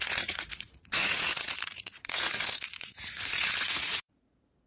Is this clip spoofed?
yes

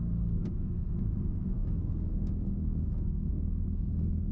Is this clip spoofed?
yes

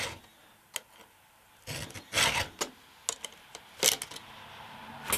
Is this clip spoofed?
no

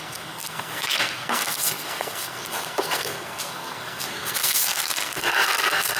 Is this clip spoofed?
yes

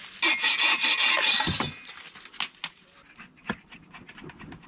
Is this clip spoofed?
no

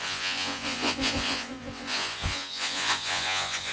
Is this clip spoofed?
yes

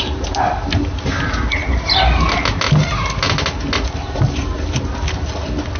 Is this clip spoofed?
no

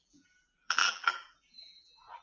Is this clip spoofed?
yes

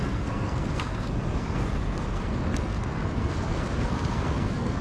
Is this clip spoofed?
yes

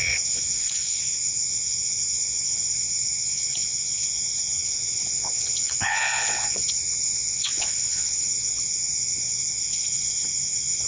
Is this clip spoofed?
yes